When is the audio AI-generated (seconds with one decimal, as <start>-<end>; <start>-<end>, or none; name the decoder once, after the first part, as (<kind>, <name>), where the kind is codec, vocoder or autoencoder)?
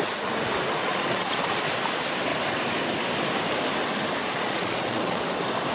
0.8-1.4 (vocoder, Vocos); 4.2-5.2